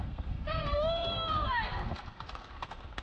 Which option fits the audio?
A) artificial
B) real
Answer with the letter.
A